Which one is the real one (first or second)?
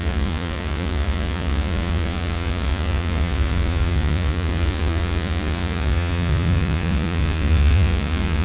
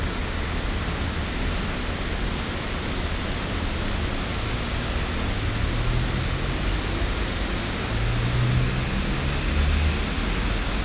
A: second